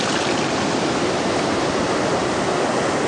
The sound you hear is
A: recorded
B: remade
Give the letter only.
A